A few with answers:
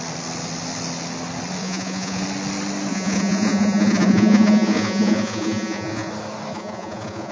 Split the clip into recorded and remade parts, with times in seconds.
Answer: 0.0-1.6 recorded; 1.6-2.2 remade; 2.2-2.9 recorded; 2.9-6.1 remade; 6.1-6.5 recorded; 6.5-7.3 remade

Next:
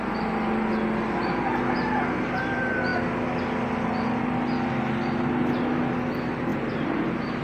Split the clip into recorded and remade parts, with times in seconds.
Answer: 0.0-6.5 recorded; 6.5-7.4 remade

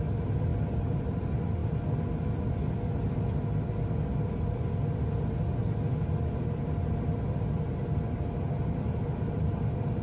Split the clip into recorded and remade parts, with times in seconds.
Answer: 0.0-10.0 recorded

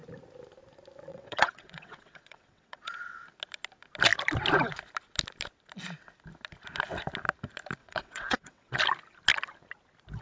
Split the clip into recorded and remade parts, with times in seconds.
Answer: 0.0-1.1 recorded; 1.1-3.0 remade; 3.0-7.8 recorded; 7.8-8.8 remade; 8.8-10.2 recorded

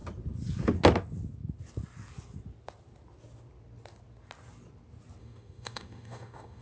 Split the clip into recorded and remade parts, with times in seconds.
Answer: 0.0-5.2 recorded; 5.2-6.6 remade

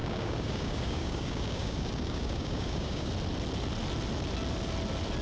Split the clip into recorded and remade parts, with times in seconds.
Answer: 0.0-3.1 remade; 3.1-5.2 recorded

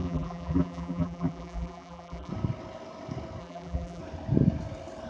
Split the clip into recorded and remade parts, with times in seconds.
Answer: 0.0-2.3 remade; 2.3-3.4 recorded; 3.4-4.0 remade; 4.0-5.1 recorded